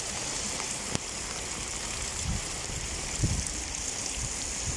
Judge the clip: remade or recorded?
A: recorded